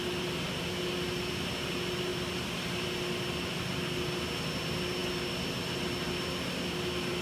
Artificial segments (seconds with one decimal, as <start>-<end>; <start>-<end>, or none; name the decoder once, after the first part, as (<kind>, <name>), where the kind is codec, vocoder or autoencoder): none